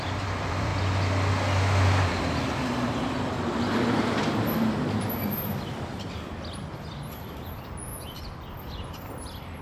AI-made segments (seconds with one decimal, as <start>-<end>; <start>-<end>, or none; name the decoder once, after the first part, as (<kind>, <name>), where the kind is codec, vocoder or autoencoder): 0.0-0.7 (vocoder, BigVGAN v2); 2.6-7.9; 8.6-9.6